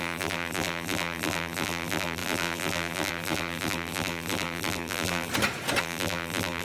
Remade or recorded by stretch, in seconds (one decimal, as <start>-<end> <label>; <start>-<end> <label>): 0.0-5.3 remade; 5.3-5.8 recorded; 5.8-6.6 remade